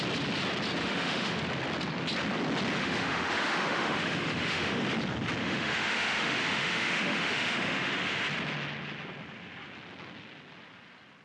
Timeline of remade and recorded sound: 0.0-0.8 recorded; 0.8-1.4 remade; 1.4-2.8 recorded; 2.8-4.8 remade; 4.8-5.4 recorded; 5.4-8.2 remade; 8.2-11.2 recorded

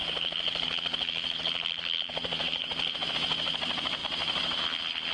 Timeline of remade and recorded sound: 0.0-3.1 remade; 3.1-4.0 recorded; 4.0-4.6 remade; 4.6-5.1 recorded